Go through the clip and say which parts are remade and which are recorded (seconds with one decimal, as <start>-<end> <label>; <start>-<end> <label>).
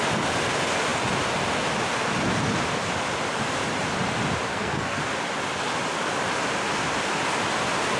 0.0-4.5 recorded; 4.5-5.0 remade; 5.0-8.0 recorded